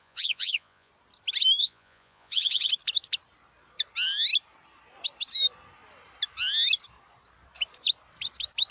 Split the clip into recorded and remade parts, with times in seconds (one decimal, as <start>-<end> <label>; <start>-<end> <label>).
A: 0.0-0.9 remade; 0.9-1.6 recorded; 1.6-2.7 remade; 2.7-8.7 recorded